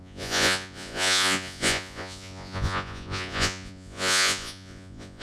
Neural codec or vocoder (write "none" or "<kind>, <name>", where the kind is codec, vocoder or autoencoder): vocoder, Vocos